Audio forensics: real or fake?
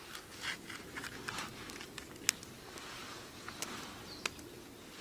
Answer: real